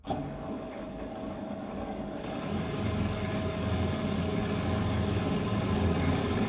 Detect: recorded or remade remade